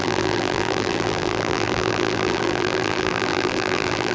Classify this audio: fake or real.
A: fake